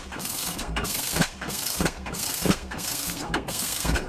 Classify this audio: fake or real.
fake